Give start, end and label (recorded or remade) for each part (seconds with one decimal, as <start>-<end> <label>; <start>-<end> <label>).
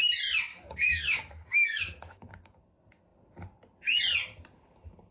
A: 0.0-0.5 recorded; 0.5-2.6 remade; 2.6-5.1 recorded